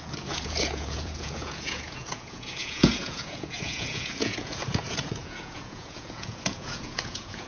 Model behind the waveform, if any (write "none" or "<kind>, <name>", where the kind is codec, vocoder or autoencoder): vocoder, Vocos